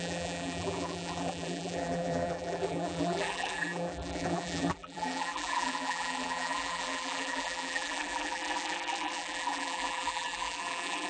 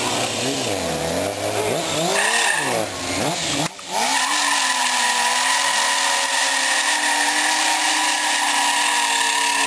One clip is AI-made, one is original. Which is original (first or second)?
second